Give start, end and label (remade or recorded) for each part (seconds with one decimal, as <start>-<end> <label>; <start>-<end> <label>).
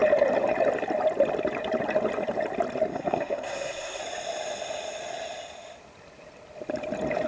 0.0-2.9 recorded; 2.9-4.0 remade; 4.0-7.3 recorded